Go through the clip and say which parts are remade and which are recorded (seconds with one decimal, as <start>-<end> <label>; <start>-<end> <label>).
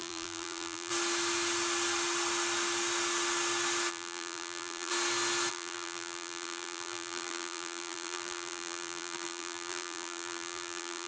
0.0-0.9 remade; 0.9-3.9 recorded; 3.9-4.9 remade; 4.9-5.5 recorded; 5.5-11.1 remade